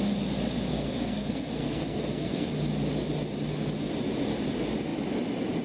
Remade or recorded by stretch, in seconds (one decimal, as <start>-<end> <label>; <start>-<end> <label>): 0.0-0.7 recorded; 0.7-2.5 remade; 2.5-5.6 recorded